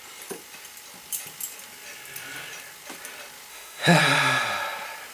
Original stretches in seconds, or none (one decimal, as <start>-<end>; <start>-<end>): 0.0-3.5; 4.0-5.1